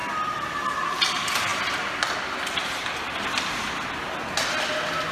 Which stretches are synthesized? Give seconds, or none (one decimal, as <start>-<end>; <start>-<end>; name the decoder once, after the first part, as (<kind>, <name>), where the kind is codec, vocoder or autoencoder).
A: none